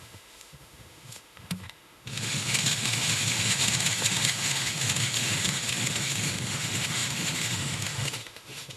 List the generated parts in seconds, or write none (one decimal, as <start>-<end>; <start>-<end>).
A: 0.0-8.8